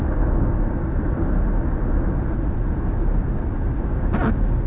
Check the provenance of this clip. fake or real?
real